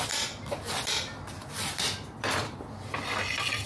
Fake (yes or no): no